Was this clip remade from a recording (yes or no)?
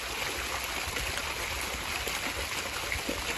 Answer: no